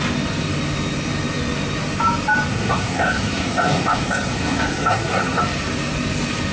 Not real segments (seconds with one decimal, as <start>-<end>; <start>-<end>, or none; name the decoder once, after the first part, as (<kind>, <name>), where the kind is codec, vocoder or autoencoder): 2.5-5.4 (codec, SNAC)